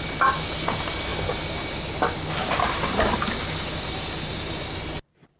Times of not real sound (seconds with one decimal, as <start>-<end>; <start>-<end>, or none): none